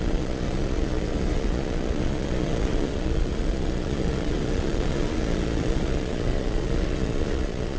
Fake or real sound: fake